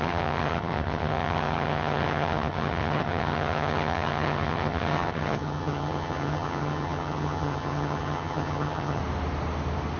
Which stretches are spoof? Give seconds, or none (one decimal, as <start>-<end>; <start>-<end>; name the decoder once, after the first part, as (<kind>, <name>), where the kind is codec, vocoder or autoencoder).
0.0-9.0 (vocoder, HiFi-GAN)